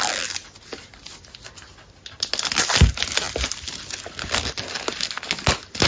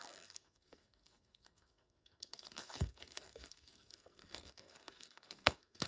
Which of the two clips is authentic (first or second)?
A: first